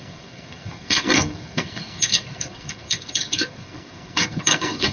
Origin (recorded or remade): remade